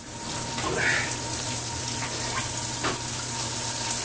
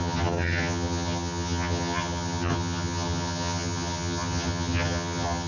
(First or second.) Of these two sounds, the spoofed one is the second